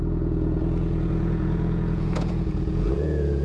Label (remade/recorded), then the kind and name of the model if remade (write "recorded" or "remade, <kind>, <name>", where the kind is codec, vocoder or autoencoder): remade, vocoder, Vocos